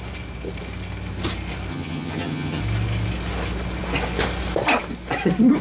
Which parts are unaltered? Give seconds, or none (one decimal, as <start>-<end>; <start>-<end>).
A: 0.0-1.7; 2.6-5.6